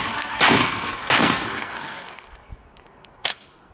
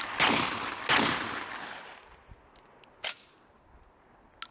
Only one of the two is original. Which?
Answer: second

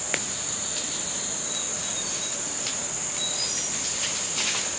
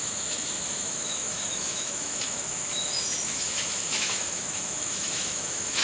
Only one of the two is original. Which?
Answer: first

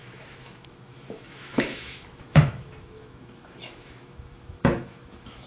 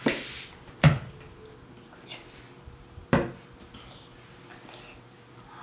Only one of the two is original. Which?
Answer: second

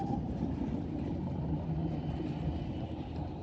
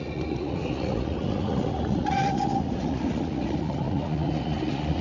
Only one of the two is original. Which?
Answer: first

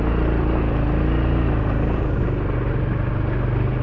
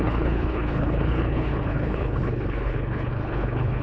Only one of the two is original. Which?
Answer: first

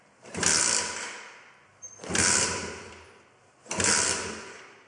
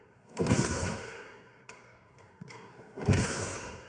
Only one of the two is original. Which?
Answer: first